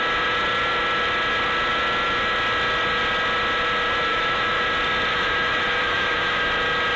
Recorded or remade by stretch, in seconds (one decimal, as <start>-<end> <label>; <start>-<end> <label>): 0.0-4.1 recorded; 4.1-4.6 remade; 4.6-5.1 recorded; 5.1-6.5 remade; 6.5-7.0 recorded

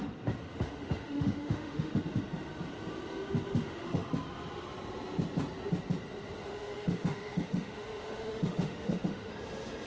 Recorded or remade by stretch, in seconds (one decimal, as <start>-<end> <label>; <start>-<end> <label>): 0.0-0.4 recorded; 0.4-2.0 remade; 2.0-3.6 recorded; 3.6-4.1 remade; 4.1-6.4 recorded; 6.4-9.3 remade; 9.3-9.9 recorded

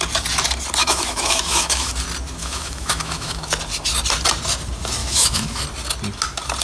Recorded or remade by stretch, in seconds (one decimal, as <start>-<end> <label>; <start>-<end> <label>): 0.0-0.8 recorded; 0.8-1.9 remade; 1.9-2.4 recorded; 2.4-3.5 remade; 3.5-5.0 recorded; 5.0-5.6 remade; 5.6-6.6 recorded

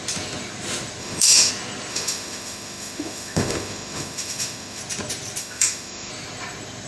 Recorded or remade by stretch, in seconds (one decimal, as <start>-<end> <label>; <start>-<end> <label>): 0.0-1.0 recorded; 1.0-1.5 remade; 1.5-1.9 recorded; 1.9-4.8 remade; 4.8-5.4 recorded; 5.4-6.1 remade; 6.1-6.9 recorded

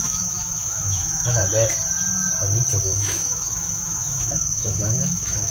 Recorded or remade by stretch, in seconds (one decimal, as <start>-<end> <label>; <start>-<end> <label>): 0.0-1.4 remade; 1.4-2.8 recorded; 2.8-5.5 remade

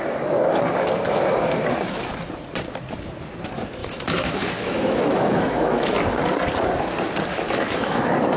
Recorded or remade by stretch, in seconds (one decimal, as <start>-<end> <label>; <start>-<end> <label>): 0.0-3.8 recorded; 3.8-6.0 remade; 6.0-7.3 recorded; 7.3-8.0 remade; 8.0-8.4 recorded

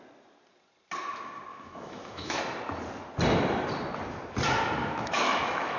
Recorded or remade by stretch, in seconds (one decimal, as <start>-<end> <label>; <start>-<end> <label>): 0.0-1.5 recorded; 1.5-2.4 remade; 2.4-4.8 recorded; 4.8-5.8 remade

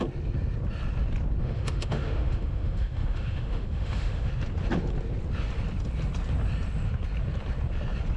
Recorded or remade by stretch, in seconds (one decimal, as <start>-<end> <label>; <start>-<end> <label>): 0.0-1.4 recorded; 1.4-4.3 remade; 4.3-8.2 recorded